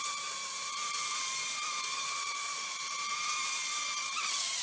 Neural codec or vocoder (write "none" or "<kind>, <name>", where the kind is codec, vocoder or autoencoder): vocoder, Vocos